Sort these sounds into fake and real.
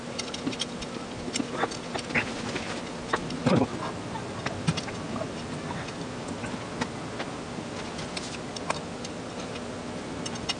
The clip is real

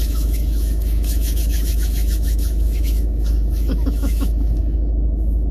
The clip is fake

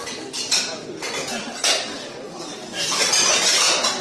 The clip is real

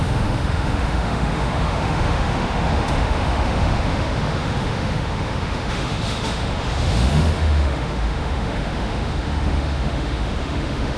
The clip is fake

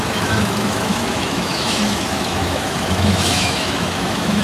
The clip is fake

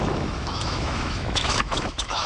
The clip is fake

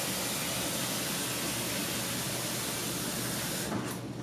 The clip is real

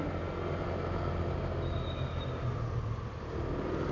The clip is real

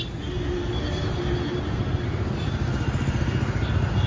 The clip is real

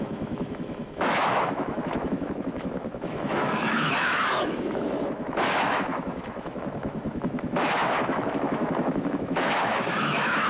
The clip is fake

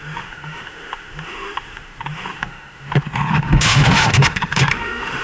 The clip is fake